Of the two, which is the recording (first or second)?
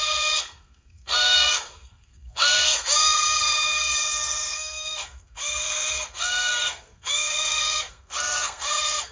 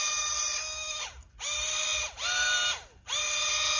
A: second